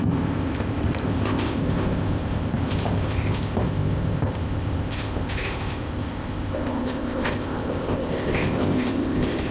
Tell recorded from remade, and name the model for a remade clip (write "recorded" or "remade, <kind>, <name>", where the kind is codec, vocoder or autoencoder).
remade, codec, ZipCodec